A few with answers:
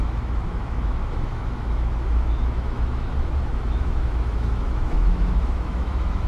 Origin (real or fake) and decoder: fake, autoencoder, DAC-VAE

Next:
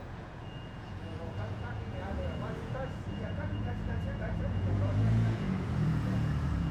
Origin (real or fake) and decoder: fake, vocoder, Vocos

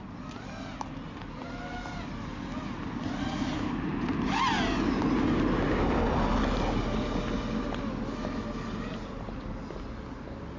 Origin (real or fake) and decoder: real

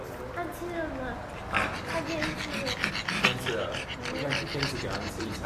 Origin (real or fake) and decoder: real